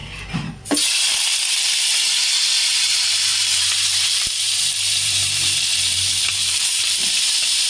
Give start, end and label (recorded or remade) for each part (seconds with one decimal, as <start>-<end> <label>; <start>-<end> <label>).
0.0-1.5 recorded; 1.5-1.9 remade; 1.9-2.7 recorded; 2.7-5.7 remade; 5.7-6.3 recorded; 6.3-7.7 remade